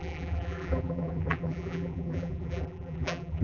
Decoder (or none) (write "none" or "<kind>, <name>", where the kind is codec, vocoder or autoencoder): vocoder, BigVGAN v2